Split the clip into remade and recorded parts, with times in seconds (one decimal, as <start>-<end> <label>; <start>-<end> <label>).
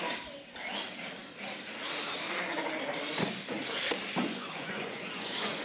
0.0-4.2 recorded; 4.2-5.6 remade